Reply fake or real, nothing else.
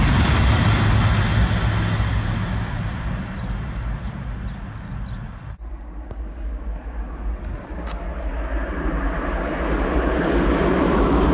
real